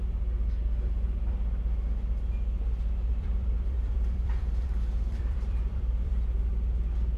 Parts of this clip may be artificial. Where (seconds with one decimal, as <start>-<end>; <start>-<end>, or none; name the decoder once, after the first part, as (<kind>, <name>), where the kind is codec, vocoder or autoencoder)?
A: 3.1-6.4 (vocoder, BigVGAN v2)